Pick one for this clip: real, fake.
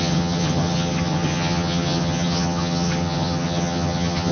fake